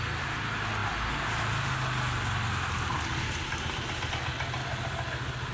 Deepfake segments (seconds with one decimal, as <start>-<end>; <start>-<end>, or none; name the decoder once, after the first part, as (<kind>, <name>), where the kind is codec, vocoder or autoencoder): none

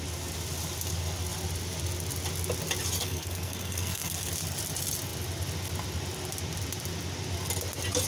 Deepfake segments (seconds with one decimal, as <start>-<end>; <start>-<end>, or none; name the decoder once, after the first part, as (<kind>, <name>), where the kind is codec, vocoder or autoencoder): 3.0-4.3 (codec, SNAC)